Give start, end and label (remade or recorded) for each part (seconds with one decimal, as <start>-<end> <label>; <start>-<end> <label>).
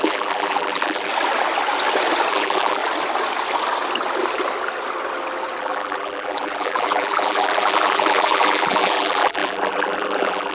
0.0-1.1 remade; 1.1-2.3 recorded; 2.3-2.8 remade; 2.8-5.6 recorded; 5.6-10.5 remade